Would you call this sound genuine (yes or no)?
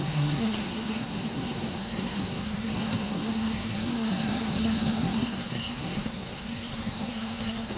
no